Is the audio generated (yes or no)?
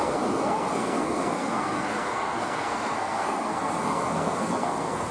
yes